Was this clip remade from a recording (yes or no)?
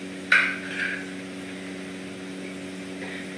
no